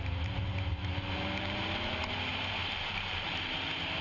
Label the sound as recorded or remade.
remade